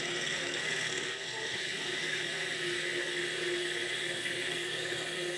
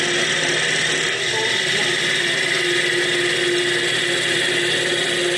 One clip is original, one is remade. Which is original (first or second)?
second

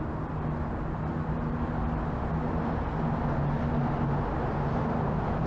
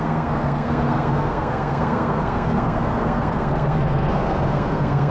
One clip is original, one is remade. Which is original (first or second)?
first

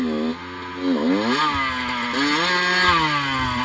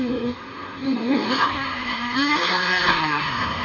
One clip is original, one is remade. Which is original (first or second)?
first